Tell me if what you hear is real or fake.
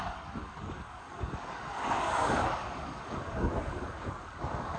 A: fake